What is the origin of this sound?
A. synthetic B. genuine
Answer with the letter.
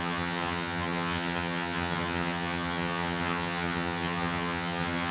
A